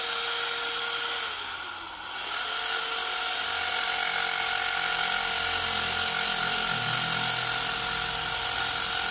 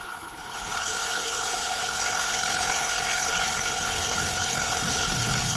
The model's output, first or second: second